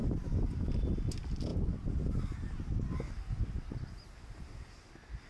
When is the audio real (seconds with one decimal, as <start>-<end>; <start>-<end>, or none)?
0.7-5.3